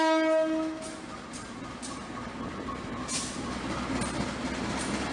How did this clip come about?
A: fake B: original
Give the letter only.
B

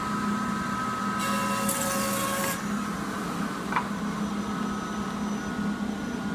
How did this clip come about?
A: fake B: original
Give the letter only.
B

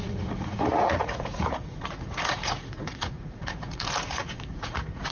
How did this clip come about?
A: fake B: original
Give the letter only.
A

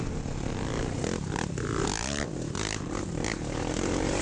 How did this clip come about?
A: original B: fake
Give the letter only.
A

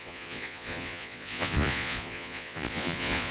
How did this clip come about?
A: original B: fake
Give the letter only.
B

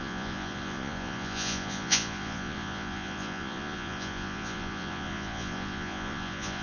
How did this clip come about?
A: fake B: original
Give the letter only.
A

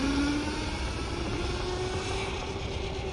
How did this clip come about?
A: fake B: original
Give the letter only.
B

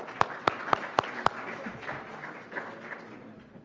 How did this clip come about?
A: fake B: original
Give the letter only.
B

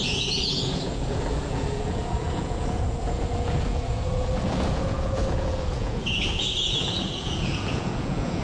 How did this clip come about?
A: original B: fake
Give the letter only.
B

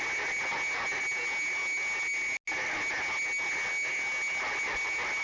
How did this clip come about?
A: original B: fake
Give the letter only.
A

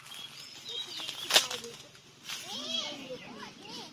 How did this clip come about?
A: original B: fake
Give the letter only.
A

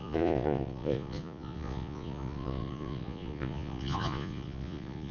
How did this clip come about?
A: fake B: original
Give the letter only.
A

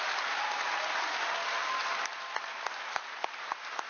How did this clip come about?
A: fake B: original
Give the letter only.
B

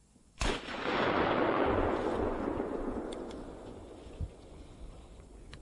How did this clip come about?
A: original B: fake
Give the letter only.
B